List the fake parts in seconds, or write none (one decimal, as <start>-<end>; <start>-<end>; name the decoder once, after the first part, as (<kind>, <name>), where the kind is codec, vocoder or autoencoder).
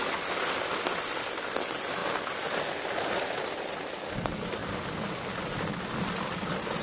none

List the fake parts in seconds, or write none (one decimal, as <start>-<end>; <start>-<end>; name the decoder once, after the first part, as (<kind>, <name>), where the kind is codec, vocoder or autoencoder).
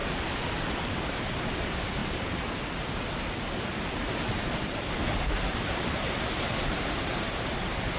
0.0-1.3 (vocoder, BigVGAN v2); 2.0-6.8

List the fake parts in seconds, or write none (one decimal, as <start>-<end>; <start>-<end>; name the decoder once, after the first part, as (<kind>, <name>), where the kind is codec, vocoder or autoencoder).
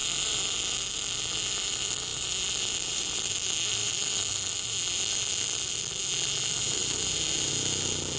0.0-0.6 (vocoder, BigVGAN v2); 2.1-3.2; 3.8-4.3; 6.8-7.5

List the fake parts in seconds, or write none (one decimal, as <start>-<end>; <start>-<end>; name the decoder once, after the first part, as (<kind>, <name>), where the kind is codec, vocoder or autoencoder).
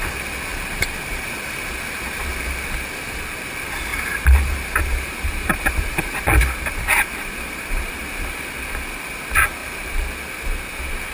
3.9-7.9 (vocoder, BigVGAN v2)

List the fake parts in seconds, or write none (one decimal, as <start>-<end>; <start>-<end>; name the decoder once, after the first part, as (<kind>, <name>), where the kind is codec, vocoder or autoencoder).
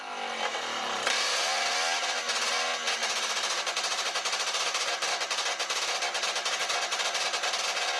3.0-5.1 (vocoder, BigVGAN v2); 6.6-7.6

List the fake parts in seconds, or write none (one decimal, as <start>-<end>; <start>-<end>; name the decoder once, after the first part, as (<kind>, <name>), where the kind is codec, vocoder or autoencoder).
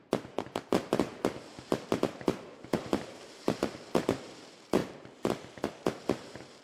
0.0-4.8 (vocoder, BigVGAN v2); 5.8-6.6